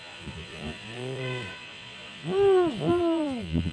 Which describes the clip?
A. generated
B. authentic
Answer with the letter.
A